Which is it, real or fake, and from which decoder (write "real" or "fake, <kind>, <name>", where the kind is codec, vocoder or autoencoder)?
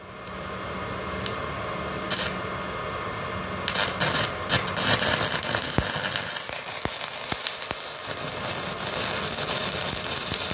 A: real